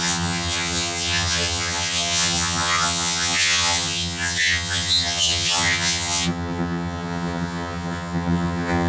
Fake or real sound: fake